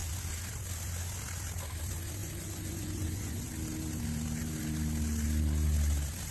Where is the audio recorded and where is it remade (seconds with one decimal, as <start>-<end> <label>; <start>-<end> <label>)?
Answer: 0.0-2.2 recorded; 2.2-3.5 remade; 3.5-6.3 recorded